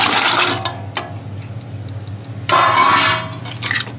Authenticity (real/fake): real